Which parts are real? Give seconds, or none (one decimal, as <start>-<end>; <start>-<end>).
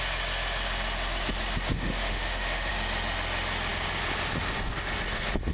0.0-1.7; 2.7-5.5